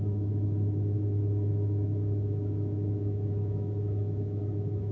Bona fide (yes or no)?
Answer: no